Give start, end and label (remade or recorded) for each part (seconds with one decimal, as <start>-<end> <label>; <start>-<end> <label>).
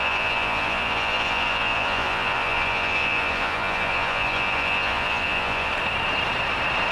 0.0-5.7 remade; 5.7-6.9 recorded